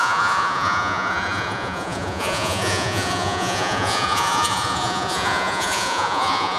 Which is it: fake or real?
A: fake